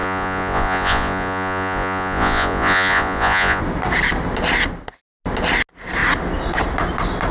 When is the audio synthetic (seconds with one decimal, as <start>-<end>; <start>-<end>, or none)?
0.0-3.6